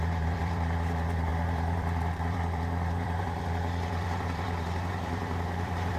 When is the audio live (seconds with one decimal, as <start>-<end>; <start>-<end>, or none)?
none

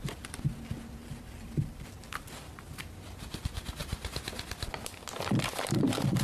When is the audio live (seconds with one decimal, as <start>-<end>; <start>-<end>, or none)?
0.0-1.0; 2.3-6.2

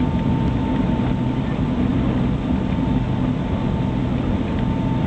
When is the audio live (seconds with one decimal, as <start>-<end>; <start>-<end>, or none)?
1.9-5.1

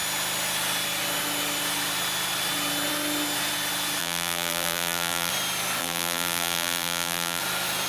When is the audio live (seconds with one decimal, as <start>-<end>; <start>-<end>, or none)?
0.0-4.0; 5.3-5.8; 7.4-7.9

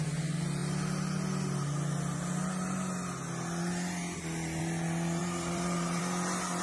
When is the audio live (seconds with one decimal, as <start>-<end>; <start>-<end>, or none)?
0.0-5.2; 6.0-6.6

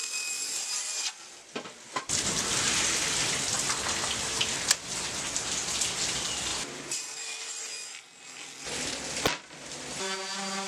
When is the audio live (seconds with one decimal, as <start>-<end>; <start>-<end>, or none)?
0.7-6.5; 7.6-10.7

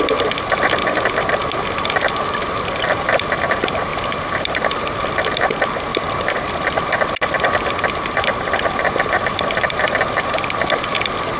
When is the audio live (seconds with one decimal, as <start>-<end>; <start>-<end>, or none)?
0.0-3.9; 5.2-5.9; 10.4-11.4